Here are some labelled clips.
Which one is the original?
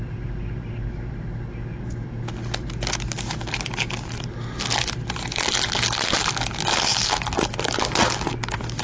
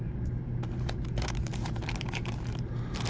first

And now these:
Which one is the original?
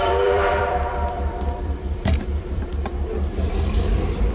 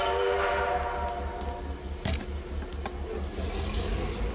second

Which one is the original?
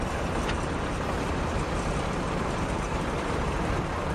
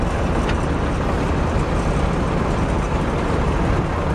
second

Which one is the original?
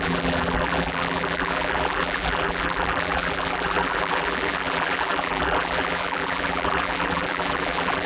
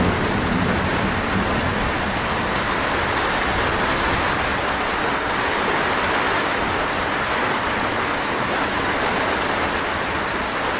second